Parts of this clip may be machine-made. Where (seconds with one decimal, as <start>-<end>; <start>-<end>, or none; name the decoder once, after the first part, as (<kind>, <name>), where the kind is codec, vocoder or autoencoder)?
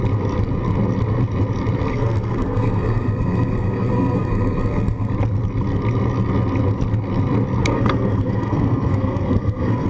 1.9-5.1 (codec, SNAC); 7.6-9.9